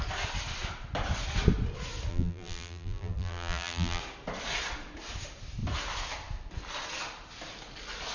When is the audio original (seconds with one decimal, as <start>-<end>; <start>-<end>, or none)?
0.0-2.1; 4.0-8.1